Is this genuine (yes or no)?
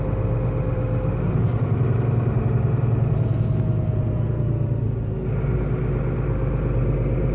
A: yes